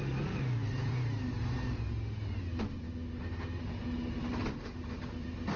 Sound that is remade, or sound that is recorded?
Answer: recorded